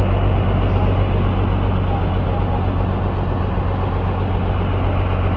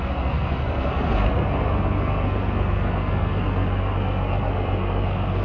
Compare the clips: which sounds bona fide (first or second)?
first